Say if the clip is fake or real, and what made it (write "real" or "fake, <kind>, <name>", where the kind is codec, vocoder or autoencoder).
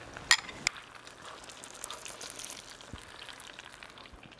real